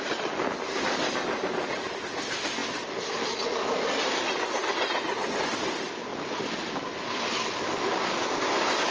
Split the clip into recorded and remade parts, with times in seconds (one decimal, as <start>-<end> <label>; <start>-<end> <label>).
0.0-8.9 recorded

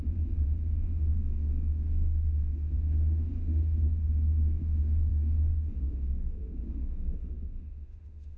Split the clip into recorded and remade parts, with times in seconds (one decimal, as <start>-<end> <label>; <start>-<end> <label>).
0.0-8.4 remade

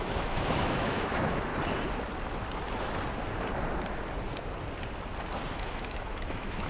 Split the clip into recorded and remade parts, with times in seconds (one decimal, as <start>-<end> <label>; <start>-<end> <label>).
0.0-1.5 remade; 1.5-5.5 recorded; 5.5-6.7 remade

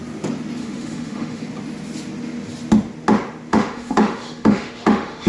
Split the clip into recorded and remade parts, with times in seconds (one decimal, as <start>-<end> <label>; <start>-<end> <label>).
0.0-0.6 recorded; 0.6-1.4 remade; 1.4-3.5 recorded; 3.5-5.3 remade